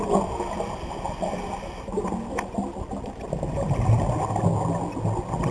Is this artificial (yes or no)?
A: no